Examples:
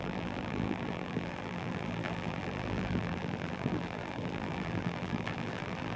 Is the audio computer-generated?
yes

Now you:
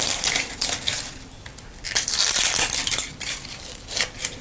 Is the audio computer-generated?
yes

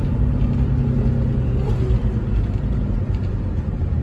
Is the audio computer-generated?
yes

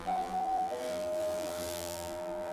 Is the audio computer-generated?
yes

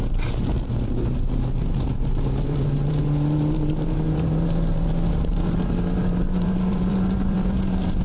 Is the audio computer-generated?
yes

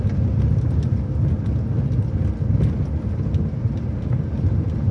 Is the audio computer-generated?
no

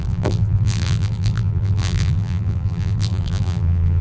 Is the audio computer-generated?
yes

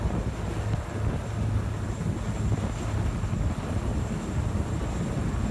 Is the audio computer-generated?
no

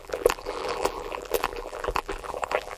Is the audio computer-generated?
yes